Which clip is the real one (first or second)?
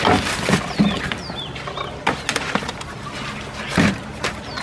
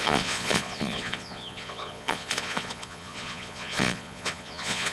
first